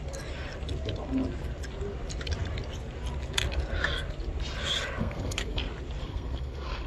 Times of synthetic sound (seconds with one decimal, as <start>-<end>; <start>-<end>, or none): 5.0-5.6; 6.0-6.9